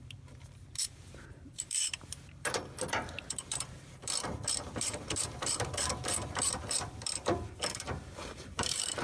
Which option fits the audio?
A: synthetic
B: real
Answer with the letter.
A